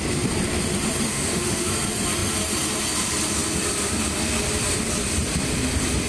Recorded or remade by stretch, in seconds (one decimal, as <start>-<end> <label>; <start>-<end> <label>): 0.0-1.1 recorded; 1.1-1.7 remade; 1.7-6.1 recorded